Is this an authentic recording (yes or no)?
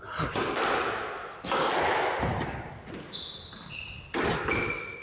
yes